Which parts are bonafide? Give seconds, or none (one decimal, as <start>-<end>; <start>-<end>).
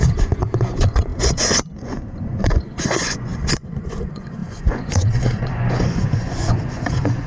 none